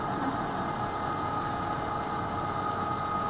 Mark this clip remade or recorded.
recorded